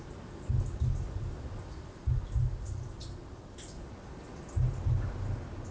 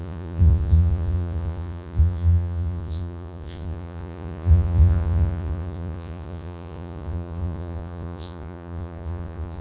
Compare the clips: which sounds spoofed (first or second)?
second